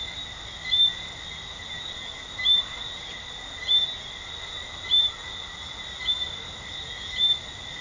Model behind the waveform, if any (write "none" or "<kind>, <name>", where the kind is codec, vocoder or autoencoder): none